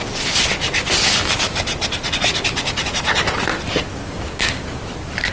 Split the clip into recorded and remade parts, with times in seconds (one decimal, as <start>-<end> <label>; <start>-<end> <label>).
0.0-3.9 recorded; 3.9-4.8 remade; 4.8-5.3 recorded